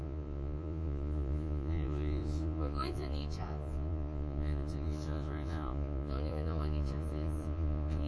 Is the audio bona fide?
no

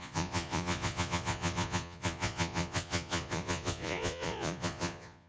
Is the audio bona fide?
no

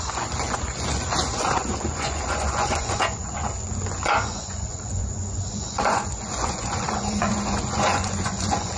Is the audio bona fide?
no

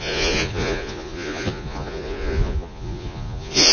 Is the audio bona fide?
no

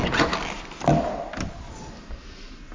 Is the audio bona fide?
yes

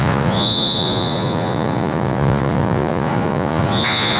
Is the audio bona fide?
no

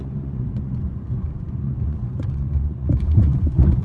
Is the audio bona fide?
no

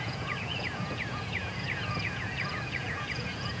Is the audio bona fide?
no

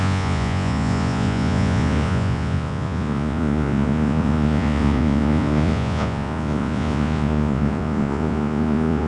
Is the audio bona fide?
no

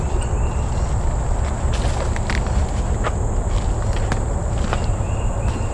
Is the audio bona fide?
yes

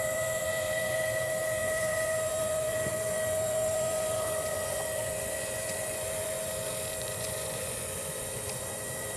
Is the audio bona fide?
no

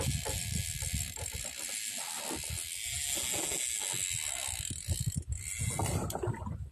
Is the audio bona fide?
yes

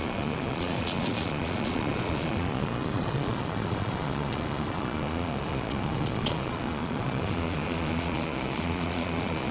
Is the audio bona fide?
no